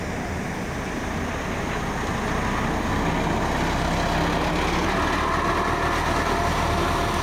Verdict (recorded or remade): recorded